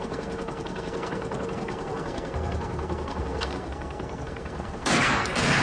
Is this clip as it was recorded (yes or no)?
no